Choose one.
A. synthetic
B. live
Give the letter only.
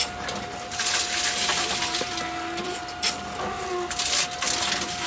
B